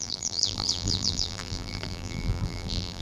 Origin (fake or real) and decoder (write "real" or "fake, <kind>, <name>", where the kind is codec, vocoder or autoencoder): fake, vocoder, BigVGAN v2